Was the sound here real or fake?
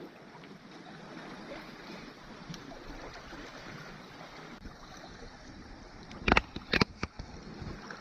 real